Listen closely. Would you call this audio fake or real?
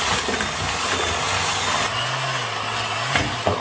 real